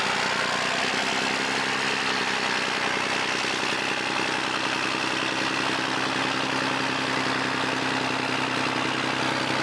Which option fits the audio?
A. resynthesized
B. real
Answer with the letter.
B